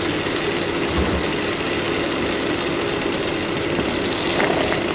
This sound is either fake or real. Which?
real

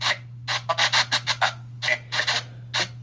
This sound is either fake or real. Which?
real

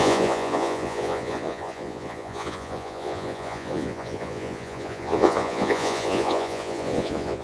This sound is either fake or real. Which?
fake